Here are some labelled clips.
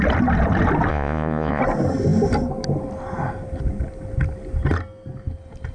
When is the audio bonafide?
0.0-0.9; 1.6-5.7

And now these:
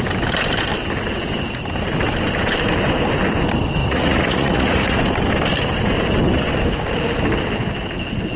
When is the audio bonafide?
0.0-3.8; 5.0-8.4

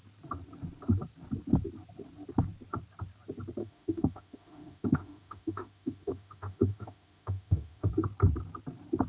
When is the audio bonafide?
0.0-3.6; 7.9-9.1

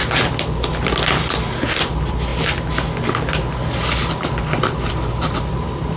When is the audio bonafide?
0.0-0.7; 2.3-4.9

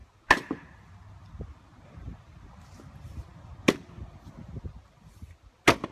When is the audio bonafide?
0.0-5.9

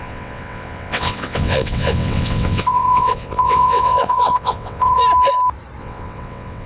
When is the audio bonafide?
5.0-5.8

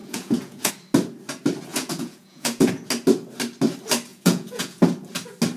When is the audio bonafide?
0.7-1.7; 2.7-4.1; 4.8-5.6

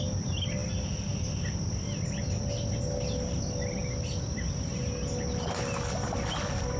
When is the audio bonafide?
0.0-6.8